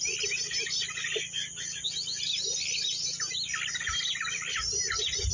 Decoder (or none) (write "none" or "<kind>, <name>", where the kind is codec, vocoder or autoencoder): none